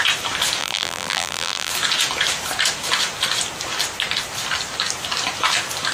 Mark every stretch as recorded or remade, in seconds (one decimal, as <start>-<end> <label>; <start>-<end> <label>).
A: 0.0-0.6 recorded; 0.6-1.7 remade; 1.7-5.9 recorded